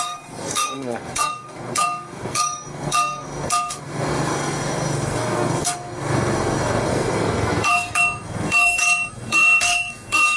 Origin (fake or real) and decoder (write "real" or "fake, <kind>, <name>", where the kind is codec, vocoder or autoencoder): fake, codec, SNAC